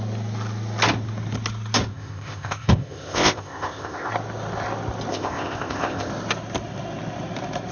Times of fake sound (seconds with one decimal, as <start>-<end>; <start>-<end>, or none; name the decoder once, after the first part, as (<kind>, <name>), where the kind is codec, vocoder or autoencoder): 1.9-4.1 (codec, ZipCodec); 5.1-6.1